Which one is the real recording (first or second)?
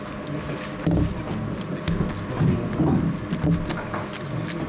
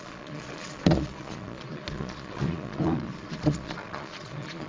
first